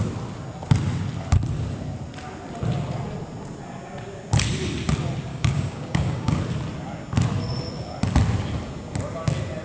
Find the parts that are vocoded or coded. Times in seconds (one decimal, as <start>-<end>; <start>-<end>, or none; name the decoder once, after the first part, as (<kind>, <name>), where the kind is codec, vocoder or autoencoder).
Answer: 5.3-6.4 (codec, DAC)